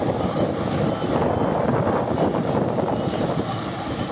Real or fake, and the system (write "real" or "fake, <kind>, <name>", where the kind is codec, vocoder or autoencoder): real